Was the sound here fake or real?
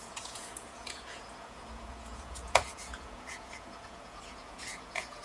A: fake